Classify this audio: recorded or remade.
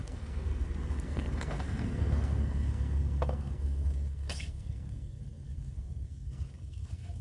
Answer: remade